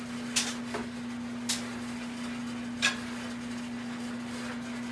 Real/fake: real